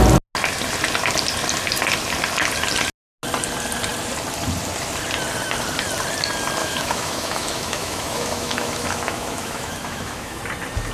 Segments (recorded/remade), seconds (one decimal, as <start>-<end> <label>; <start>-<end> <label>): 0.0-6.6 recorded; 6.6-10.4 remade; 10.4-10.9 recorded